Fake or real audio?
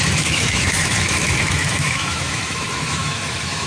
fake